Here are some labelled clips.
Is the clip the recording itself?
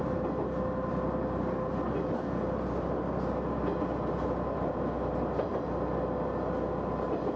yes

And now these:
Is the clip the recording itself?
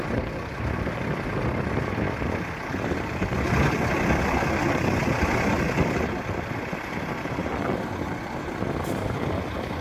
yes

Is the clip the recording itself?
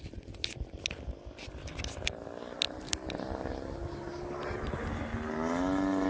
yes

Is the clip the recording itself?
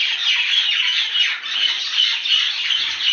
yes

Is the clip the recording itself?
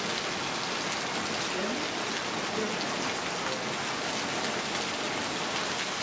yes